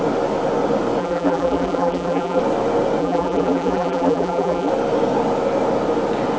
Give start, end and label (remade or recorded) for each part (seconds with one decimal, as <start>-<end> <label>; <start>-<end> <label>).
0.0-1.0 recorded; 1.0-2.4 remade; 2.4-3.0 recorded; 3.0-4.7 remade; 4.7-6.4 recorded